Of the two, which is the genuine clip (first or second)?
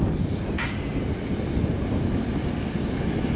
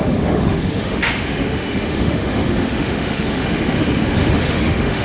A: first